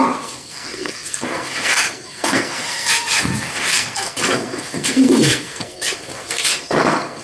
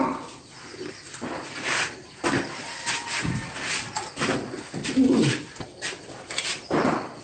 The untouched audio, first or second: second